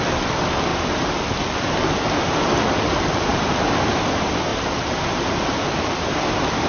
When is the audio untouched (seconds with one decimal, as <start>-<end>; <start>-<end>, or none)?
0.0-0.7; 2.0-3.3; 4.0-4.5; 5.9-6.7